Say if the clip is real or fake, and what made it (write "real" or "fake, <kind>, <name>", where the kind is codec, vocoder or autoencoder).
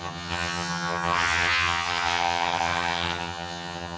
fake, vocoder, HiFi-GAN